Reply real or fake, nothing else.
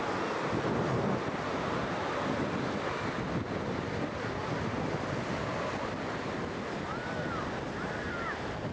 real